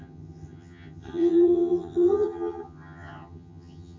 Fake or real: fake